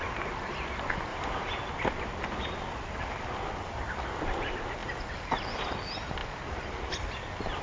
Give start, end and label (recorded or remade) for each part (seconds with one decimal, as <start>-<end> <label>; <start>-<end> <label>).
0.0-1.1 recorded; 1.1-4.2 remade; 4.2-4.8 recorded; 4.8-5.6 remade; 5.6-6.2 recorded; 6.2-7.6 remade